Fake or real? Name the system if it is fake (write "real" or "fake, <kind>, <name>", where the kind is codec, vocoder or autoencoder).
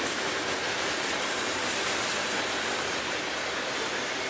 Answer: real